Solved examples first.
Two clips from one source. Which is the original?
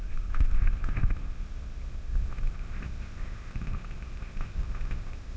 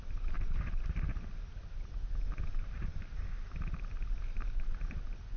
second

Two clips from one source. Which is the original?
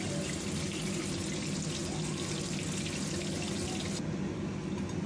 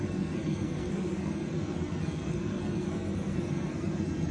first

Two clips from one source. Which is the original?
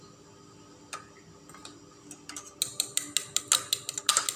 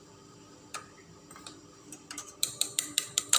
first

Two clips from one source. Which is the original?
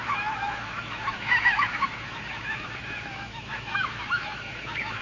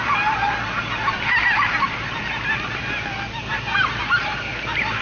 second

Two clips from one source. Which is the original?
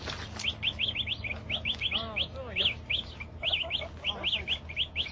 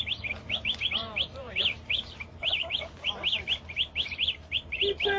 first